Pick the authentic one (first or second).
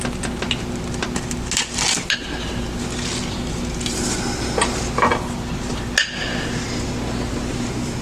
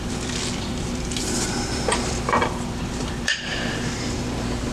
first